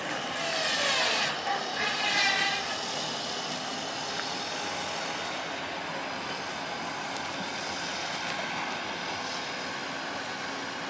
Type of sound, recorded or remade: recorded